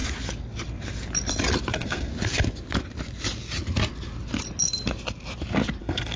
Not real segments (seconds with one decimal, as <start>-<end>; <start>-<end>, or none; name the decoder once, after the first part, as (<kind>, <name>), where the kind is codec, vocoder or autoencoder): 1.7-2.1 (codec, SNAC); 5.8-6.2